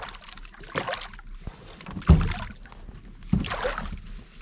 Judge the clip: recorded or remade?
recorded